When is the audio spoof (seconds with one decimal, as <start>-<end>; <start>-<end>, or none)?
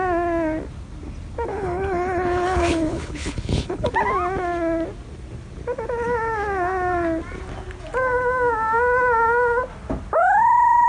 1.5-3.9